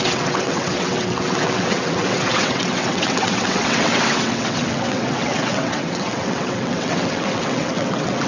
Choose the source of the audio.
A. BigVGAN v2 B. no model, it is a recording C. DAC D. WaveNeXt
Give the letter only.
D